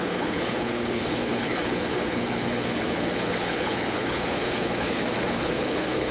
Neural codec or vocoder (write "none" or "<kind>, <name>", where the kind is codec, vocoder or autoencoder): codec, HILCodec